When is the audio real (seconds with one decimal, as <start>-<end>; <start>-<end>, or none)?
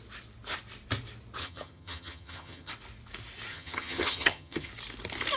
0.0-1.4; 2.7-3.5; 4.7-5.4